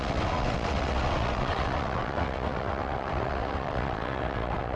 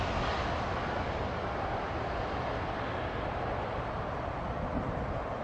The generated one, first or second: first